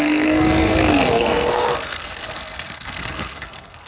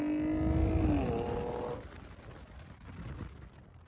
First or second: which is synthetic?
first